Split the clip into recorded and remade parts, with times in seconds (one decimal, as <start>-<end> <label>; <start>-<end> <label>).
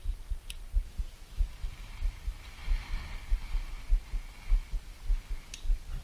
0.0-6.0 recorded